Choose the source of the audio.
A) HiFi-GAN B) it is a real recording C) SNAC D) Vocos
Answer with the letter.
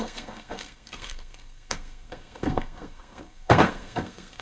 C